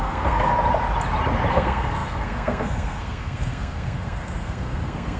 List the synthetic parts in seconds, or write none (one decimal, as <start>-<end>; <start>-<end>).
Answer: 0.0-0.5; 1.5-5.2